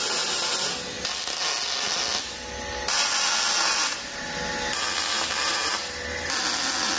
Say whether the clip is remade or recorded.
recorded